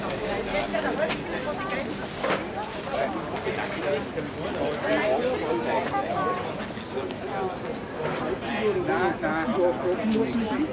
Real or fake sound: real